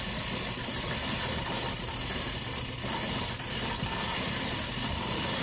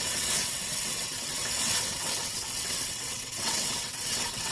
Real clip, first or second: first